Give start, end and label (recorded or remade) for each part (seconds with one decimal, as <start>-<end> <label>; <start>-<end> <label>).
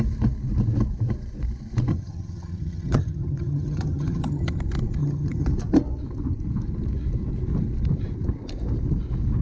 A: 0.0-1.9 recorded; 1.9-4.6 remade; 4.6-5.0 recorded; 5.0-5.5 remade; 5.5-9.4 recorded